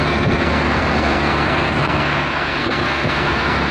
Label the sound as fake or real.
fake